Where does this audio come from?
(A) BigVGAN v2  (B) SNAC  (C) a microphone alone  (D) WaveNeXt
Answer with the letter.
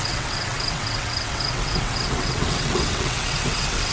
D